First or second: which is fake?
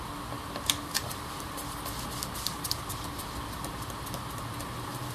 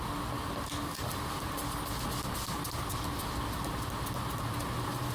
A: first